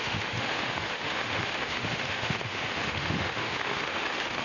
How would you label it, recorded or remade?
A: remade